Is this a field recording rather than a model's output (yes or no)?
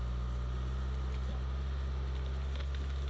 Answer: yes